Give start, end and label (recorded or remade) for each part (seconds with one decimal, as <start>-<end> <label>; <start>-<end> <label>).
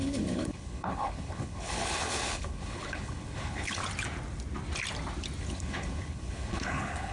0.0-3.8 remade; 3.8-5.4 recorded; 5.4-7.1 remade